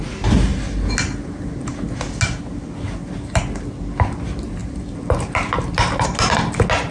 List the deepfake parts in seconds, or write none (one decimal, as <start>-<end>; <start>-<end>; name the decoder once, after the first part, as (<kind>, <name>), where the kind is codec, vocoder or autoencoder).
none